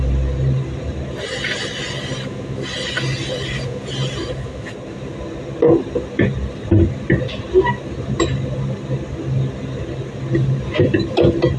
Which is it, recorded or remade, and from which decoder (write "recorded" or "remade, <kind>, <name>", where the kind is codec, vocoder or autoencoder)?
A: recorded